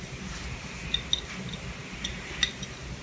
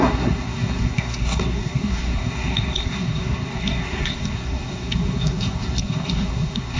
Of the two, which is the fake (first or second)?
second